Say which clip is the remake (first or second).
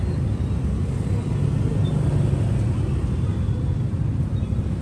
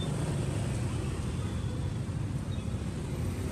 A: second